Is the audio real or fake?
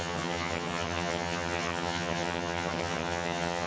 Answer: fake